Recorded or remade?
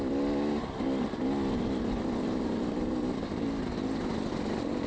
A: recorded